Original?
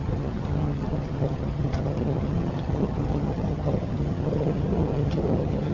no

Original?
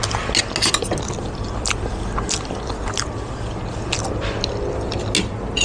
yes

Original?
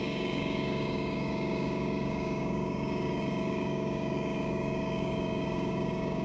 no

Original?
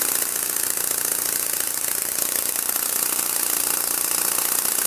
no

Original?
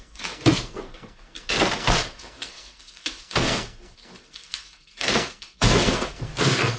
no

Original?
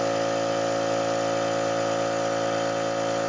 yes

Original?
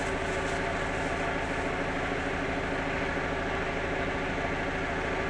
yes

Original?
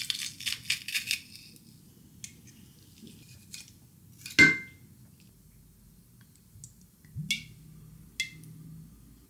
yes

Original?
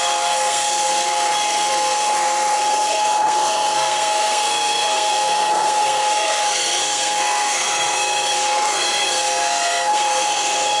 no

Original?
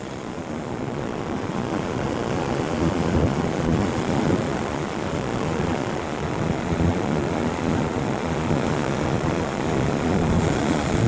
no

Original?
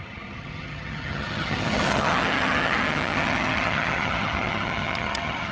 no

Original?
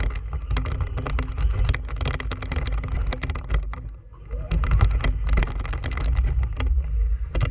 yes